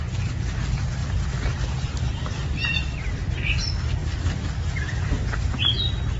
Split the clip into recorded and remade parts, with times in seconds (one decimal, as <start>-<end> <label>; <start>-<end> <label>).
0.0-1.0 recorded; 1.0-3.6 remade; 3.6-4.0 recorded; 4.0-5.1 remade; 5.1-6.2 recorded